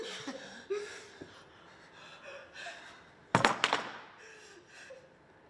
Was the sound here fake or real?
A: real